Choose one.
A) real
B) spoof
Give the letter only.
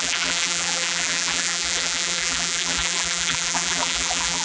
B